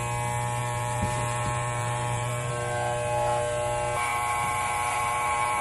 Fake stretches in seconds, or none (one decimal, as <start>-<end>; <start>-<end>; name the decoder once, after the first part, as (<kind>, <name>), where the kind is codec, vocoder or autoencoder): 0.6-2.5 (vocoder, BigVGAN v2); 4.1-5.6